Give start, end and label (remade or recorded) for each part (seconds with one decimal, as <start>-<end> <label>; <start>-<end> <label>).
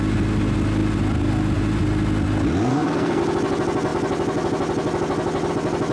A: 0.0-2.7 recorded; 2.7-3.2 remade; 3.2-5.9 recorded